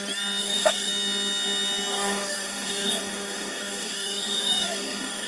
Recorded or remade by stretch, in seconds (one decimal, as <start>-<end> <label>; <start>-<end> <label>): 0.0-0.4 recorded; 0.4-0.9 remade; 0.9-1.9 recorded; 1.9-5.3 remade